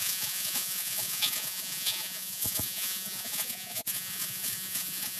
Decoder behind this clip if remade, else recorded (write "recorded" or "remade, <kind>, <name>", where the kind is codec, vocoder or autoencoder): remade, vocoder, Vocos